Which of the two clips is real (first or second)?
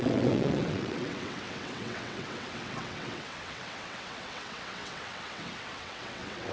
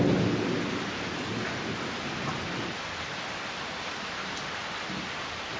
second